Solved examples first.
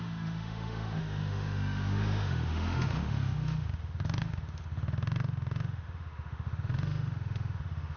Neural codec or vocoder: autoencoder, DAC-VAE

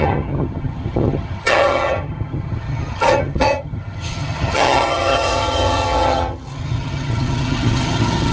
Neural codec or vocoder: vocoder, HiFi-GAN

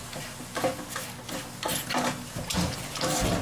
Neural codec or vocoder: none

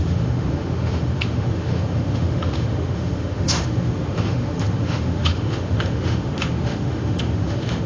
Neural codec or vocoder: autoencoder, DAC-VAE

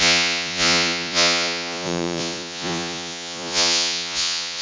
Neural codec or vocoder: vocoder, Vocos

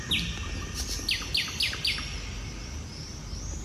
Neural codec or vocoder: vocoder, BigVGAN v2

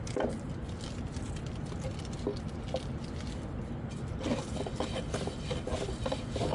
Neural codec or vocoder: none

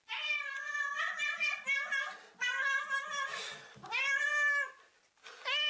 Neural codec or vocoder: none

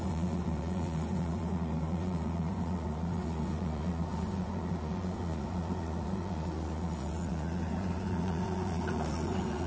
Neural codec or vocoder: vocoder, Vocos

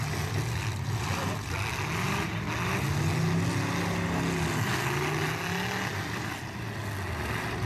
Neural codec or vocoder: none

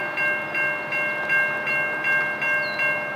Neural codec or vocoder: none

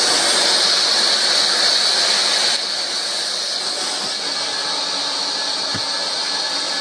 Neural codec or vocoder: none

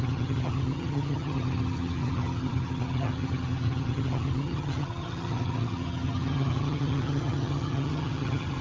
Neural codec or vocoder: vocoder, HiFi-GAN